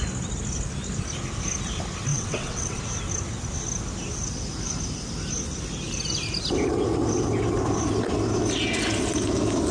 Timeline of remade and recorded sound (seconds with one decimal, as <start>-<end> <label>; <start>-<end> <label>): 0.0-2.1 recorded; 2.1-2.8 remade; 2.8-9.7 recorded